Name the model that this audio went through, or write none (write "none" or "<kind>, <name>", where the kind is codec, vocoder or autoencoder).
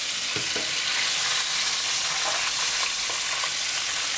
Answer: none